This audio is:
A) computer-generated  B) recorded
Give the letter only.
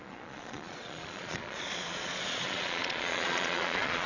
A